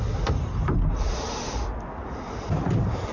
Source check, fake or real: real